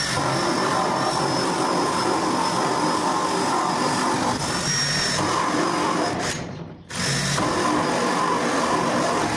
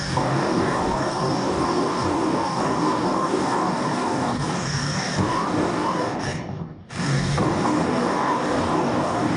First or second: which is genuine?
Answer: first